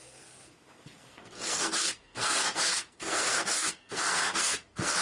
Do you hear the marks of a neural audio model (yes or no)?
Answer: yes